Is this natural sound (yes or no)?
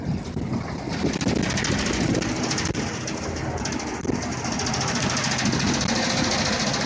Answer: yes